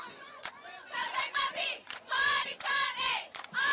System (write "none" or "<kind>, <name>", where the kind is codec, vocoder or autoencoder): vocoder, Vocos